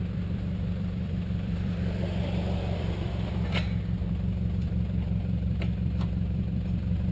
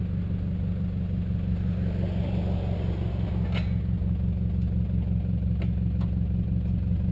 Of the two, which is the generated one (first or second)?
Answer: first